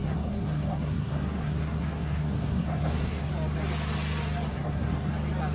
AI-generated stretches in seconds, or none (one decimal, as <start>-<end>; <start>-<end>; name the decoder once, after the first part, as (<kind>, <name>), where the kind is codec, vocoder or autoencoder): 0.0-3.3 (codec, SNAC); 4.5-5.1